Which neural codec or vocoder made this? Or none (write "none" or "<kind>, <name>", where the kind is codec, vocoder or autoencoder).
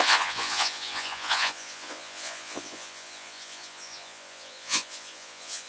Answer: vocoder, Vocos